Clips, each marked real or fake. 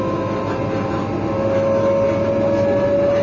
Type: real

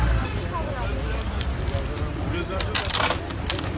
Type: real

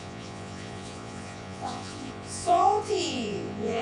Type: fake